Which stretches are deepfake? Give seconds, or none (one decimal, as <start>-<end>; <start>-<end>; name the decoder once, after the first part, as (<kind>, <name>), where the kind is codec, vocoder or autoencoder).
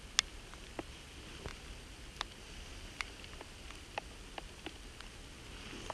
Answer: 1.5-5.0 (vocoder, BigVGAN v2)